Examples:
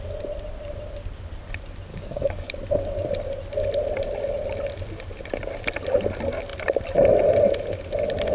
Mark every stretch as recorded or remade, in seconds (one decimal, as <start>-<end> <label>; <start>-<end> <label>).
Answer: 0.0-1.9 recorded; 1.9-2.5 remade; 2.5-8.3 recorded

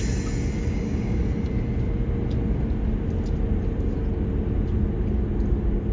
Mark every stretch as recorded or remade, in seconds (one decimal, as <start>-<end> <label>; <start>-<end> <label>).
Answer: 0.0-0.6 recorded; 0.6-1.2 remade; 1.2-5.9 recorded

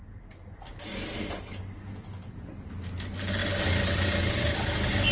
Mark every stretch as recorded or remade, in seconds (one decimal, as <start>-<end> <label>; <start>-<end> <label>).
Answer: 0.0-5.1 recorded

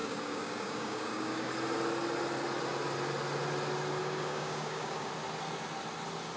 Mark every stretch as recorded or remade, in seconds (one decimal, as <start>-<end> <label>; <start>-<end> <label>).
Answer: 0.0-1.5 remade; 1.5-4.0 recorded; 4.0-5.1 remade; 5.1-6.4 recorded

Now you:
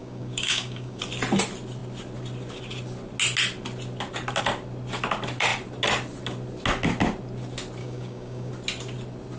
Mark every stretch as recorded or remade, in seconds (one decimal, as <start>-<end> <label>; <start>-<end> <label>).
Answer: 0.0-1.0 remade; 1.0-7.8 recorded; 7.8-8.5 remade; 8.5-9.4 recorded

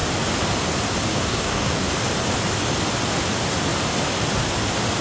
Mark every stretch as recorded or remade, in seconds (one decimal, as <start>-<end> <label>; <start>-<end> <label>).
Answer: 0.0-1.1 recorded; 1.1-1.9 remade; 1.9-5.0 recorded

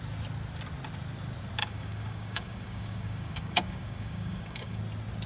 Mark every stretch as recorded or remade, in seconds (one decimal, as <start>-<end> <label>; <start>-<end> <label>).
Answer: 0.0-1.6 recorded; 1.6-4.8 remade; 4.8-5.3 recorded

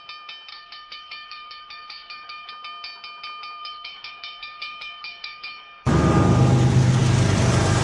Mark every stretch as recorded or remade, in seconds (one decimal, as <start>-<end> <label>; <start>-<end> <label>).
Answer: 0.0-0.5 recorded; 0.5-2.5 remade; 2.5-3.6 recorded; 3.6-5.9 remade; 5.9-7.8 recorded